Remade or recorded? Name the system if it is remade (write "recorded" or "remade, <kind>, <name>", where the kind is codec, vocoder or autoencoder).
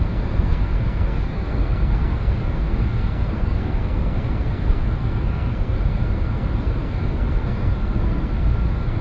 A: remade, codec, SNAC